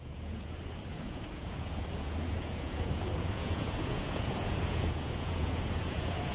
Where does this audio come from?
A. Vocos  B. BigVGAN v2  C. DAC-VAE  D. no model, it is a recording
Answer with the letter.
A